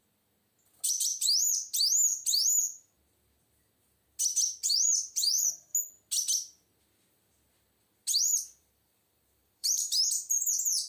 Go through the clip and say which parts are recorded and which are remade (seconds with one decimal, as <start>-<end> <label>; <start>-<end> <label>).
0.0-4.7 recorded; 4.7-5.7 remade; 5.7-8.2 recorded; 8.2-10.9 remade